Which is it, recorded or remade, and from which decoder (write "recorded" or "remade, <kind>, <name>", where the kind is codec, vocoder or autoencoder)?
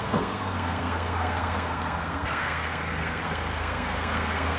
remade, codec, SNAC